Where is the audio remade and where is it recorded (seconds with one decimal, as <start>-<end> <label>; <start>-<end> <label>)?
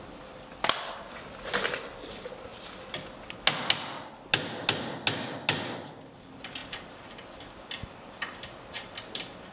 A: 0.0-9.5 recorded